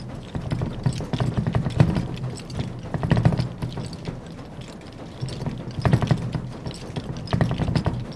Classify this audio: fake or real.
real